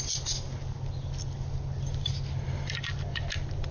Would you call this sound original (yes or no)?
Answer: yes